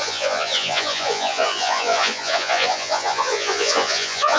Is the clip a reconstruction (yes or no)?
yes